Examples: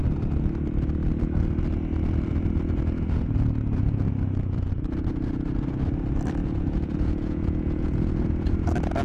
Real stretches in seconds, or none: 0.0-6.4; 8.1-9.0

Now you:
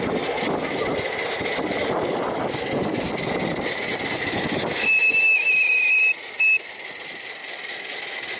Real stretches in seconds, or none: 0.0-7.4; 8.0-8.4

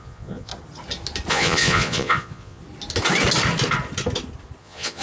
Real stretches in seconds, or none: 0.5-1.3; 2.6-4.6

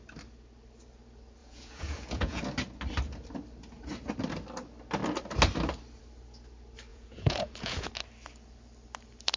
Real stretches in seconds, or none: 0.0-1.4; 2.4-6.9; 7.9-9.4